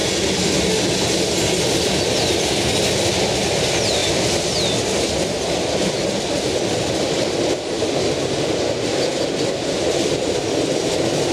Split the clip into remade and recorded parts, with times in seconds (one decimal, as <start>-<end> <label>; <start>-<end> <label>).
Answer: 0.0-11.3 recorded